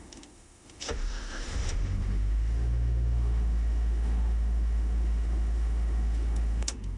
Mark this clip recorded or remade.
remade